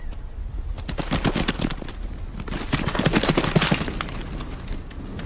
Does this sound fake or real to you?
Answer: real